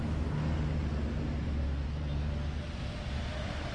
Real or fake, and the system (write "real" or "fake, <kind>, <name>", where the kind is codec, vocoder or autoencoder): real